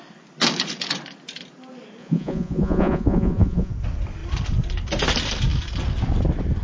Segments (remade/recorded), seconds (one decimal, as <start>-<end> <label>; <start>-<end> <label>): 0.0-2.0 recorded; 2.0-3.7 remade; 3.7-6.6 recorded